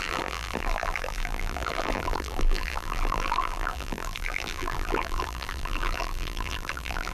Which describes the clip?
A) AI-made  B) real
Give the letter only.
A